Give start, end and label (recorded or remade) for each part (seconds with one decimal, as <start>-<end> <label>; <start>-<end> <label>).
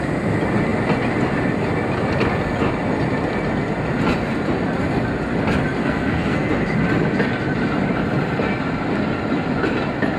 0.0-5.8 recorded; 5.8-6.5 remade; 6.5-10.2 recorded